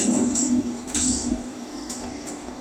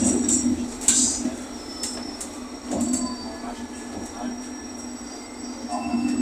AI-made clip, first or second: first